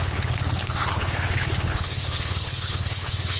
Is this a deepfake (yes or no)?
yes